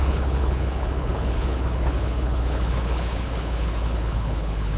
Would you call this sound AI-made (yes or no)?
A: yes